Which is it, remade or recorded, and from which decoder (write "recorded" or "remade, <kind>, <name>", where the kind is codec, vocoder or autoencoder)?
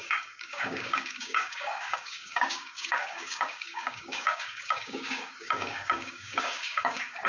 remade, codec, DAC